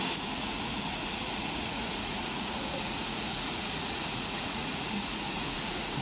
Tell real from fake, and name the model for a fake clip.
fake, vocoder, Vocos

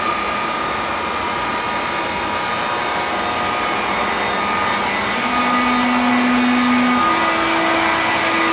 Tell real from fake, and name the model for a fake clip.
real